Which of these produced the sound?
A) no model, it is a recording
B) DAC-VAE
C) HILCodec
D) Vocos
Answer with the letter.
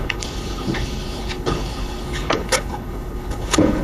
C